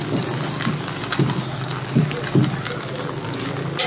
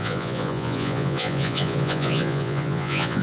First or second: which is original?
first